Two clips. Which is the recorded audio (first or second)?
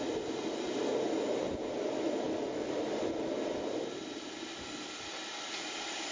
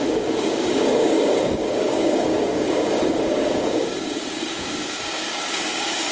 first